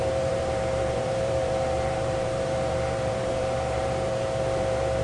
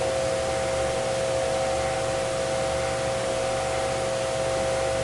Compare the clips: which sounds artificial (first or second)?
first